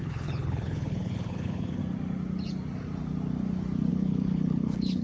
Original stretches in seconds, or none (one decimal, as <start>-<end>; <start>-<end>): 1.8-3.9